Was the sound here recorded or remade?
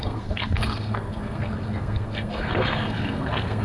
remade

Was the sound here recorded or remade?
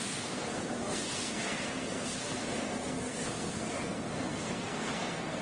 remade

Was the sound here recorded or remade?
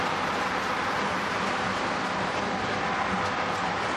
recorded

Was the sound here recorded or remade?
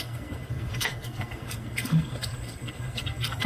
remade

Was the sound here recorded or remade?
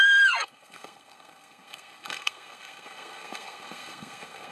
remade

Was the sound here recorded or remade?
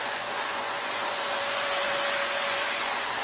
remade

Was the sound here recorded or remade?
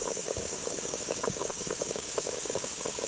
remade